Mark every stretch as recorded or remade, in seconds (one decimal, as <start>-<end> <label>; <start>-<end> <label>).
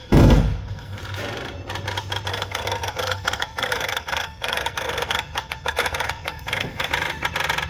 0.0-1.0 remade; 1.0-2.3 recorded; 2.3-6.9 remade; 6.9-7.7 recorded